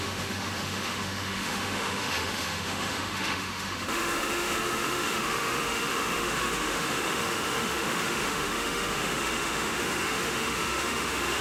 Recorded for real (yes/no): no